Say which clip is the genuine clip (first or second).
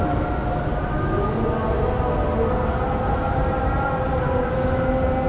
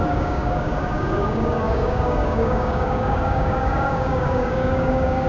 first